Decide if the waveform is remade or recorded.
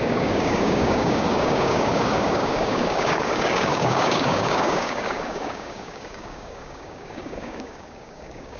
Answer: remade